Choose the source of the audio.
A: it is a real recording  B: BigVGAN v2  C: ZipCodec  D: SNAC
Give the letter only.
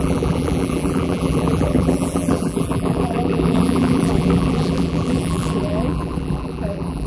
B